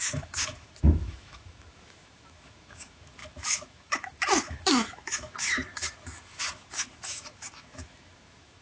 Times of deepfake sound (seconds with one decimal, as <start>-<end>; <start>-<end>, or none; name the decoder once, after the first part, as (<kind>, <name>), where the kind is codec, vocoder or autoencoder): 0.0-8.6 (autoencoder, DAC-VAE)